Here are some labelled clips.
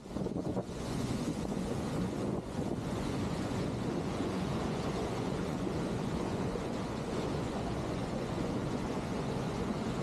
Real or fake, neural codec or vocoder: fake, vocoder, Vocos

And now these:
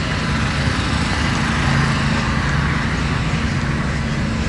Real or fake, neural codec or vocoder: real